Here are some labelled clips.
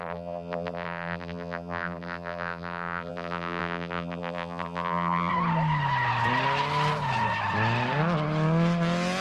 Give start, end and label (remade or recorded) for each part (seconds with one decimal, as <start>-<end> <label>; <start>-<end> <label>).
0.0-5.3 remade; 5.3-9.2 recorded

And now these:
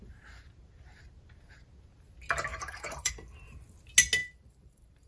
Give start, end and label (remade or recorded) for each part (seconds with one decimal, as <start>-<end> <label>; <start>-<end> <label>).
0.0-2.5 recorded; 2.5-3.1 remade; 3.1-4.2 recorded; 4.2-5.1 remade

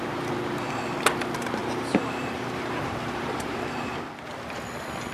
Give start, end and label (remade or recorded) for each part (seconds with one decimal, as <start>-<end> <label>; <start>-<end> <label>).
0.0-1.6 recorded; 1.6-3.4 remade; 3.4-5.1 recorded

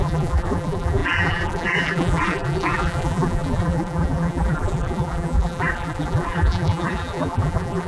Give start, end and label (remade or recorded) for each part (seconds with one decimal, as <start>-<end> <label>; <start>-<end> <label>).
0.0-7.9 remade

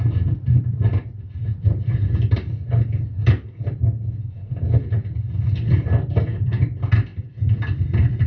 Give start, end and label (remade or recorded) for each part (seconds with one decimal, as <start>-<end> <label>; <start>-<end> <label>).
0.0-7.1 recorded; 7.1-8.3 remade